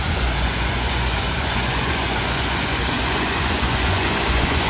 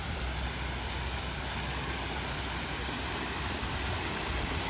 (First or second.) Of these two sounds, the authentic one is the second